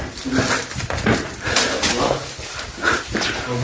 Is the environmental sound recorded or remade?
recorded